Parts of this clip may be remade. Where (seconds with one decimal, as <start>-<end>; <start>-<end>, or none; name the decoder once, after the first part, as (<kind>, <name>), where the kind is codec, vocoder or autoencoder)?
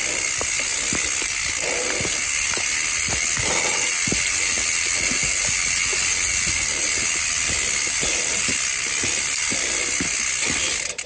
none